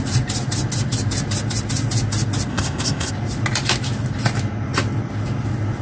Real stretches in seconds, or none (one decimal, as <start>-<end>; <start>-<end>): 0.0-2.5; 3.1-5.8